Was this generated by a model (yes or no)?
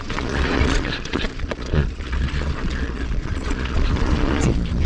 yes